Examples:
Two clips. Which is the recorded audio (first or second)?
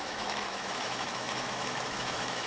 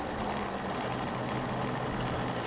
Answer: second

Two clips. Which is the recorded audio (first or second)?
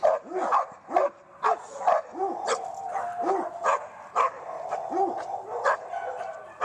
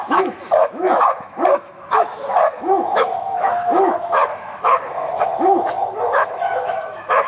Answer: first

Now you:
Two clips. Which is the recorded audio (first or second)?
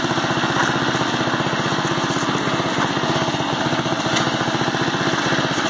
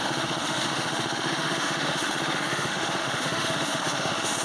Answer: first